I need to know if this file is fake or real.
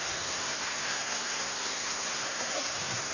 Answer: fake